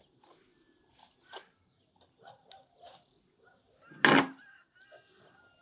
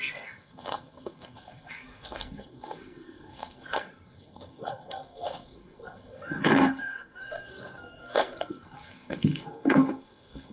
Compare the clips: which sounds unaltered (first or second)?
first